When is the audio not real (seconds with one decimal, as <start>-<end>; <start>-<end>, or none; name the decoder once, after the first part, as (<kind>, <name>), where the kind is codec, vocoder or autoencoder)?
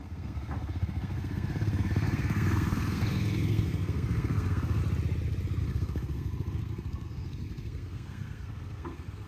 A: 0.0-4.8 (codec, SNAC); 5.6-9.3